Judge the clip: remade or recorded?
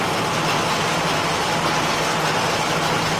recorded